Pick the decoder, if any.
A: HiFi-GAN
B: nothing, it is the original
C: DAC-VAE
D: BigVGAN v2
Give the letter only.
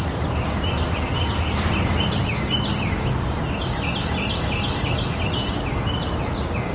B